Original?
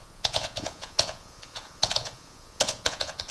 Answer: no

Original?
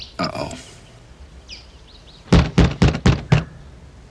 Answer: yes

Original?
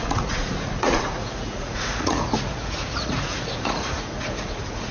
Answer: no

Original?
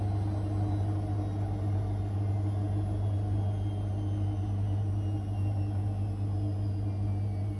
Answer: yes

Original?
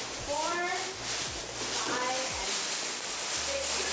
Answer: yes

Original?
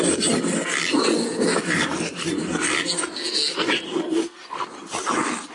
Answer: yes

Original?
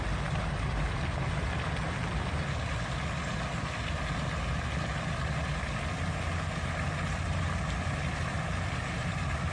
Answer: yes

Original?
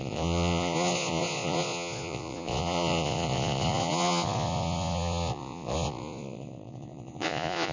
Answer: no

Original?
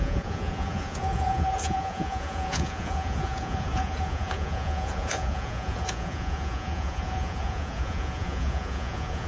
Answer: no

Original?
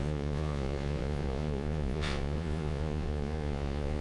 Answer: no